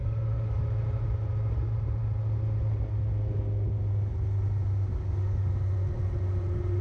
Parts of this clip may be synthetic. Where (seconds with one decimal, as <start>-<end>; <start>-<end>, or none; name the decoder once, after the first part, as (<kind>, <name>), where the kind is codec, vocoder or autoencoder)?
0.0-0.6 (codec, DAC); 4.9-5.5